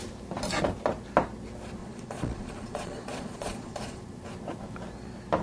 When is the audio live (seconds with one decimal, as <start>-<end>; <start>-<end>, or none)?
0.0-1.8; 4.0-5.4